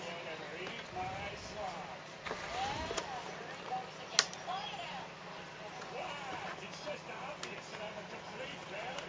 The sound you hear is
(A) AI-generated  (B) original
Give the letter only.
B